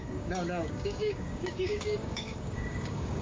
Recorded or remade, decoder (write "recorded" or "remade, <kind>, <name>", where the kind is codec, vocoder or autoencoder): remade, codec, DAC